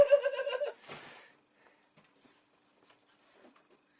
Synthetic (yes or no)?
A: no